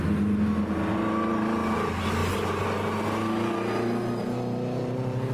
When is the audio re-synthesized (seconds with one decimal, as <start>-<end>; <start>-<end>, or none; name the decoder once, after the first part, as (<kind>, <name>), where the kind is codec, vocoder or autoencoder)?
none